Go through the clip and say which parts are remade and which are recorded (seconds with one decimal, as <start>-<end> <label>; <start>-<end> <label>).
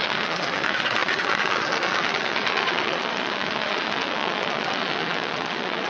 0.0-5.9 remade